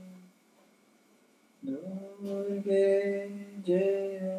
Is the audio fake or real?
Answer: fake